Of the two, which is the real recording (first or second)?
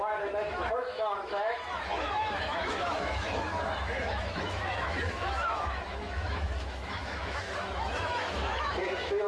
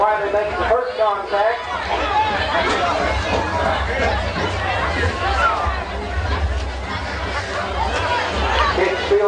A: second